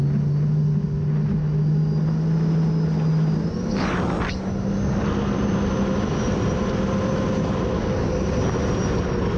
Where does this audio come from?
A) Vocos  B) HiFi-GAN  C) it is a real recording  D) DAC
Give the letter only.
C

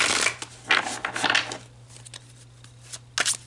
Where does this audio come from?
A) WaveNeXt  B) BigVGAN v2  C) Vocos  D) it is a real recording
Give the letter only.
D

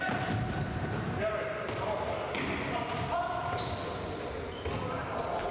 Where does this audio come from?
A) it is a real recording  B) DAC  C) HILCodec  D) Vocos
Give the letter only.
A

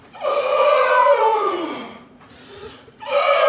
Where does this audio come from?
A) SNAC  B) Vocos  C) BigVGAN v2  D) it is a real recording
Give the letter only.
B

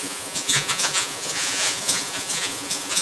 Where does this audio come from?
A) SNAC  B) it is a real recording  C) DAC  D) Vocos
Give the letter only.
D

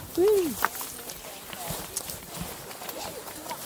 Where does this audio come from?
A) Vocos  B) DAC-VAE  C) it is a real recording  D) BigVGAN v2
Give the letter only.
C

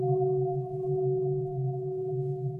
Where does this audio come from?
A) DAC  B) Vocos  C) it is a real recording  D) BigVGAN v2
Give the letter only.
B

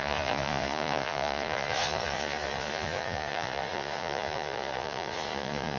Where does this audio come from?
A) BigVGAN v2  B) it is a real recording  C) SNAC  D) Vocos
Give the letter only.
D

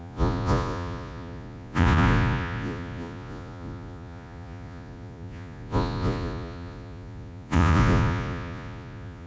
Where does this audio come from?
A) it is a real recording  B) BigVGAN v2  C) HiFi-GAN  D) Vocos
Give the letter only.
D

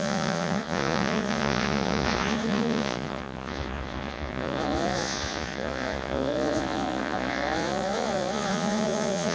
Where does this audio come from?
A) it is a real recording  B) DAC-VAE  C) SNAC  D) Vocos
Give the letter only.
D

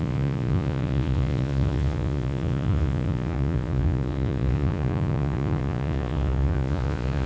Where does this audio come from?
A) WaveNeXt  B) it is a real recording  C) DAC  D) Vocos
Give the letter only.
D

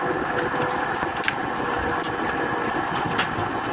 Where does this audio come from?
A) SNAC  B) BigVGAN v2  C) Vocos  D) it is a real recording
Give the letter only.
D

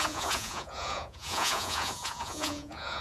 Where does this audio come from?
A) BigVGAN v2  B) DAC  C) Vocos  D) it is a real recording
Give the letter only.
C